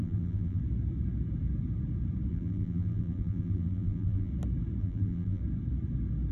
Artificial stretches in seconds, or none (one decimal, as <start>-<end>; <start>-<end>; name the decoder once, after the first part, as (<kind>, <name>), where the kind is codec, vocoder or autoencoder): 0.0-0.6 (vocoder, BigVGAN v2); 2.3-4.3; 4.8-5.4